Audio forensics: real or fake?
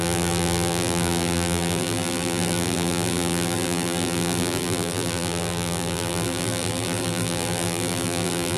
fake